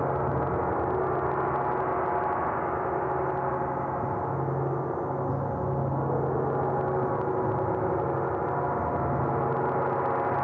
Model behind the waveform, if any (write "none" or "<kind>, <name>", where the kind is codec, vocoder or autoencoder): none